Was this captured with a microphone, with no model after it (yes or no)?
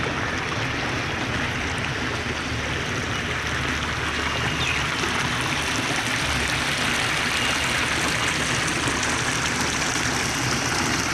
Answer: yes